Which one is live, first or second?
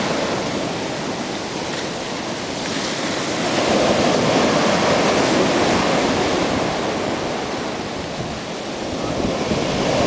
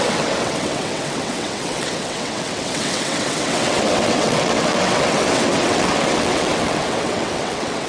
first